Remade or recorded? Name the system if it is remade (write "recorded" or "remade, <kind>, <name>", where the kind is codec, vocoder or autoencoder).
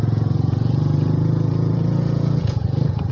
remade, vocoder, Vocos